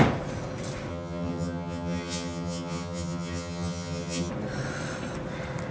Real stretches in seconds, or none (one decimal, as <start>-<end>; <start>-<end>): 0.0-0.9; 4.3-5.7